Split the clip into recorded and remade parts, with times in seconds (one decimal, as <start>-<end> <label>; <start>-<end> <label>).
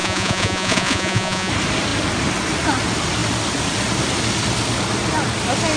0.0-1.5 remade; 1.5-5.8 recorded